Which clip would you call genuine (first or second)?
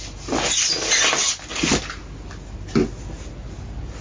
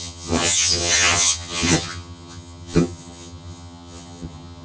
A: first